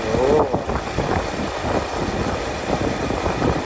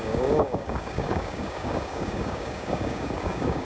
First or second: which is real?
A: first